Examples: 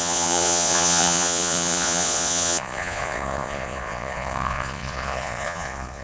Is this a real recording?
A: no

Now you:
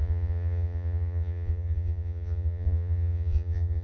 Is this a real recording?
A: no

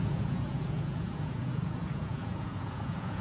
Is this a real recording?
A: no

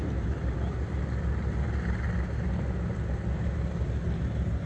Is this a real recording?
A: yes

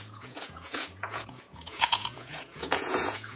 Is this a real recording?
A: no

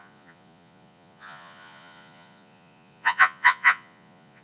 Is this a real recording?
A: no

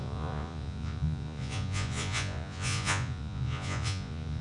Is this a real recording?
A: no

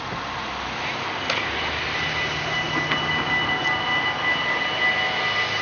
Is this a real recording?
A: yes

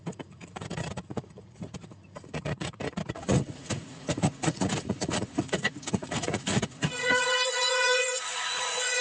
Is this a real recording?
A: no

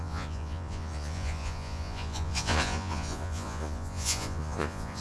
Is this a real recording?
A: no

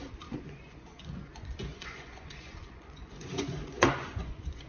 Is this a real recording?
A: no